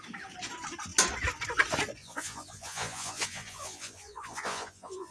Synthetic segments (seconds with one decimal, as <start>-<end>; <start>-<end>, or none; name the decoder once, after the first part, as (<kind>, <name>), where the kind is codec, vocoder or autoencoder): 2.0-5.1 (vocoder, Vocos)